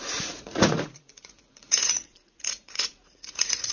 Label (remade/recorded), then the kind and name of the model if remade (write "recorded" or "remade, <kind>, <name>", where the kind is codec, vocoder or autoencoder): remade, vocoder, Vocos